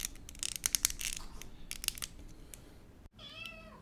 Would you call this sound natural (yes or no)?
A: yes